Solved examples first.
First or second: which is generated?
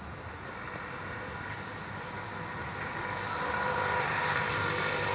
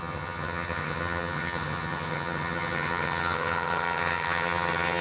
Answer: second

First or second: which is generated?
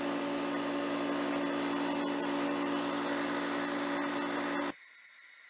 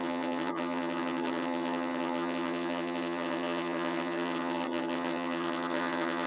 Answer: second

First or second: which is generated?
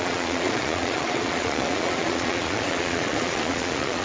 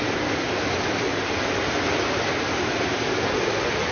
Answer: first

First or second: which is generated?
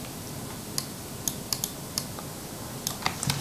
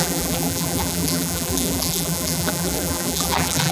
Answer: second